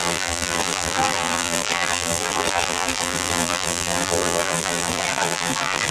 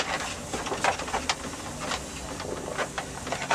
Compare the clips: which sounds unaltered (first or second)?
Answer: second